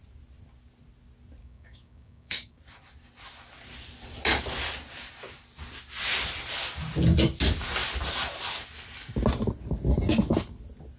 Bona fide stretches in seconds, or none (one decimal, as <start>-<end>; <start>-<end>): 0.0-1.4; 2.6-11.0

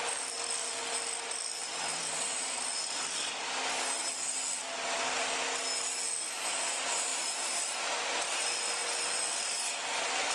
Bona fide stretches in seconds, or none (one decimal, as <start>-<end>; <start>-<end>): 0.0-1.6; 3.6-8.8

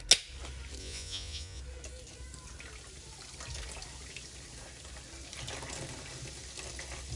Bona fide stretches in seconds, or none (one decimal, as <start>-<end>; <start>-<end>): 0.0-0.8; 1.6-7.2

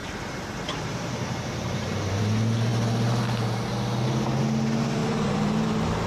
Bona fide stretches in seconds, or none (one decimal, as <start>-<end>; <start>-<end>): 2.2-5.0

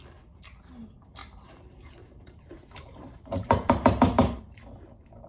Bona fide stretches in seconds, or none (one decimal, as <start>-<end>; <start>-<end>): 0.0-1.2; 4.4-5.3

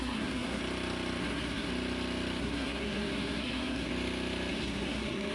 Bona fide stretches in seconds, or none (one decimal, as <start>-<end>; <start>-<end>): 0.6-1.2; 1.7-2.4; 3.9-4.5